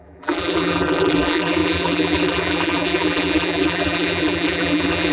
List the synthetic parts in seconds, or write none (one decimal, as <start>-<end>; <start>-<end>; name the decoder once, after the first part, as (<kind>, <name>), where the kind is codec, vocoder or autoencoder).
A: 0.0-5.1 (vocoder, BigVGAN v2)